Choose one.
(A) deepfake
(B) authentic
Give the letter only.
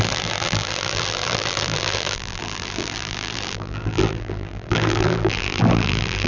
A